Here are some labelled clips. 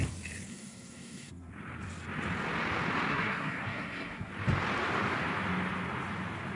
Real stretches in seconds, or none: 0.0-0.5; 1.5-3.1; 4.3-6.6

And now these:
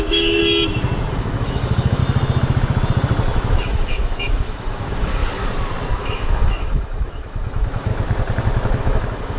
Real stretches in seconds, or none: 0.4-1.1; 2.0-3.5; 5.2-5.9; 7.9-8.8

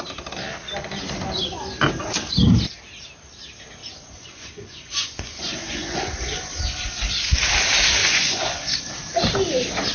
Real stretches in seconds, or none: 0.0-3.8; 6.6-8.0; 8.8-9.9

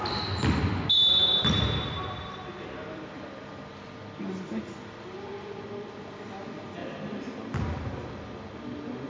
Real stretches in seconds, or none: 0.0-9.1